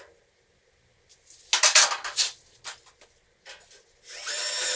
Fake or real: real